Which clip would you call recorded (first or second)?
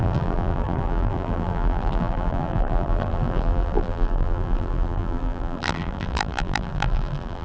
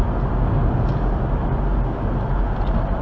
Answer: second